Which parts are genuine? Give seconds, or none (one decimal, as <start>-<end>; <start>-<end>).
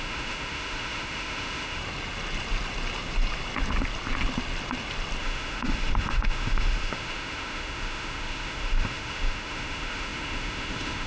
1.8-5.2